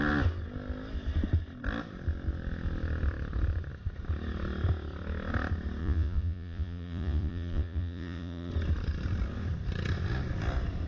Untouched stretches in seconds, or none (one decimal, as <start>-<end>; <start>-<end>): 0.0-5.8; 8.5-10.9